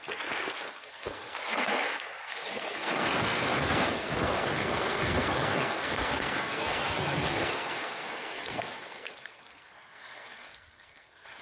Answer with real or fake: fake